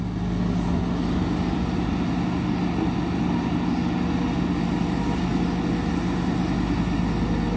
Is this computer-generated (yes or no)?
no